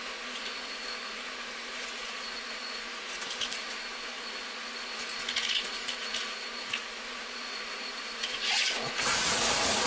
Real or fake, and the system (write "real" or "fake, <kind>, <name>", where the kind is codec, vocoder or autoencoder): fake, vocoder, Vocos